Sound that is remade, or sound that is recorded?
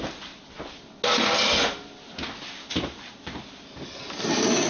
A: recorded